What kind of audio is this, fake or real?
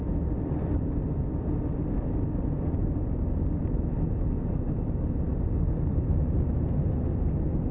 real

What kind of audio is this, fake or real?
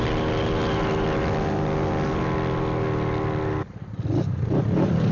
real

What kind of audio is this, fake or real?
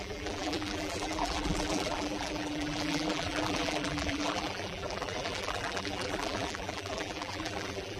fake